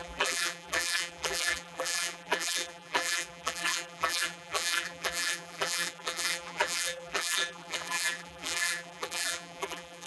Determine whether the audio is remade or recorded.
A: remade